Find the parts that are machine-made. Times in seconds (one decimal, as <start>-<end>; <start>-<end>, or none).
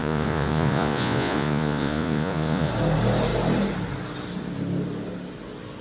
0.0-2.7